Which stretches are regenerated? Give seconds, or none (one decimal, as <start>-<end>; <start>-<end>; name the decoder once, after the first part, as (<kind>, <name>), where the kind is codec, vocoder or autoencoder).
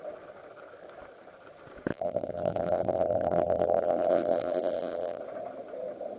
1.9-5.2 (vocoder, BigVGAN v2)